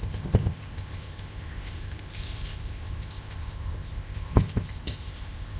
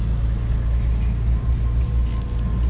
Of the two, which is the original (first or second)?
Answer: second